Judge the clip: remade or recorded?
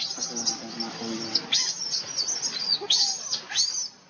recorded